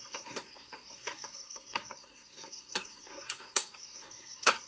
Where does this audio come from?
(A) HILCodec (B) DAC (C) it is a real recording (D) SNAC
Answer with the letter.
D